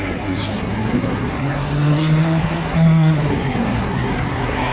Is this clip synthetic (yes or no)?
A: yes